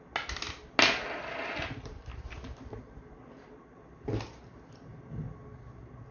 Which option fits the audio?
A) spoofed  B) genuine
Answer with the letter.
B